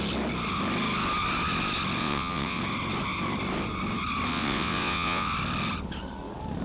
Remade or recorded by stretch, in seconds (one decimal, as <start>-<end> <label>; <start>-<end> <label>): 0.0-2.0 recorded; 2.0-2.6 remade; 2.6-4.3 recorded; 4.3-5.3 remade; 5.3-6.6 recorded